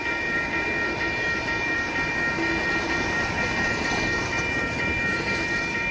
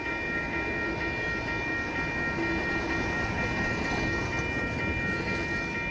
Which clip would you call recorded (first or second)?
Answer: second